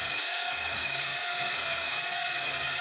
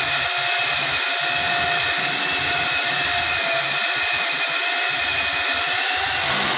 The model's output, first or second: first